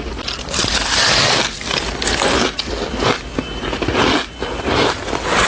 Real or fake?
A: real